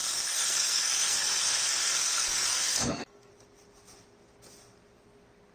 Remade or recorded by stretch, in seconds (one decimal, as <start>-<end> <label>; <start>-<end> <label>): 0.0-3.3 remade; 3.3-5.5 recorded